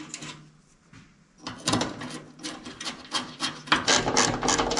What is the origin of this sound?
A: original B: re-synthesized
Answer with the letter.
A